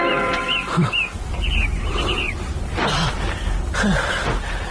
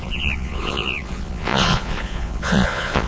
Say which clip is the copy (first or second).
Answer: second